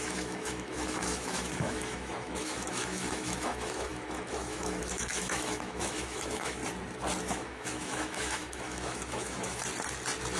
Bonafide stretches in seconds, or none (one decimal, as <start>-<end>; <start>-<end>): 6.6-7.2; 9.6-10.4